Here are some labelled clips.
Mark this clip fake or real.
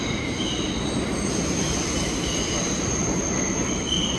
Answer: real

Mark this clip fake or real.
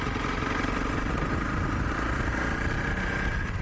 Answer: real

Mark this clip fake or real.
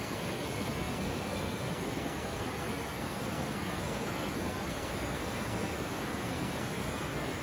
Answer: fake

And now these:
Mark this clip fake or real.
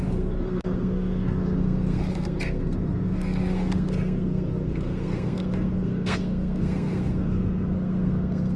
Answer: fake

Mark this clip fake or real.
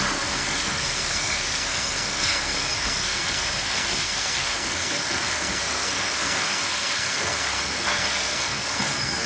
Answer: fake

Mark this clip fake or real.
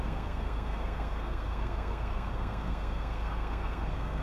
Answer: fake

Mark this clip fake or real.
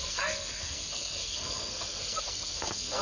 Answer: fake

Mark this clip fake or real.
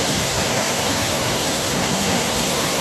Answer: fake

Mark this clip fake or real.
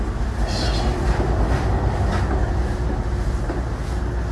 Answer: real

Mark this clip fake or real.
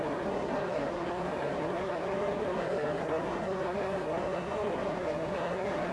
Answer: fake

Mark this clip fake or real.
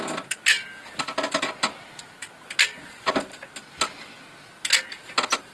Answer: real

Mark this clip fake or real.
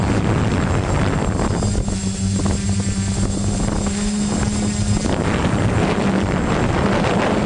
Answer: real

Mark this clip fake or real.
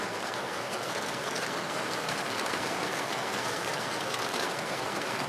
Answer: fake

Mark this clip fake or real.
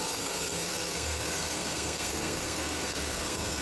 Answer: fake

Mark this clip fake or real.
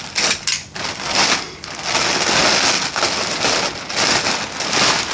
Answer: real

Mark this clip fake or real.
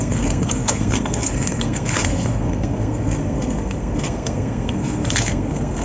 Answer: fake